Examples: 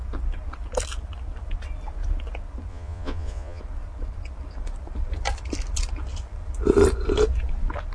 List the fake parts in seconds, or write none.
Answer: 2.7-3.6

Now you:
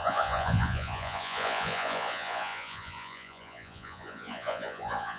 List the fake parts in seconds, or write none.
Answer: 0.0-5.2

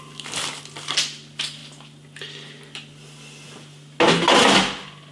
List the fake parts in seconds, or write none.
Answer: none

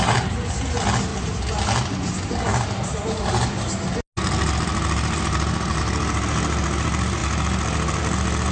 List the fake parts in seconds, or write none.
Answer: none